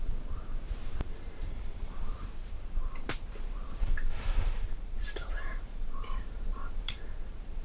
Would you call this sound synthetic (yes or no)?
yes